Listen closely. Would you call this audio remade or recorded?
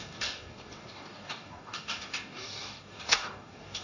remade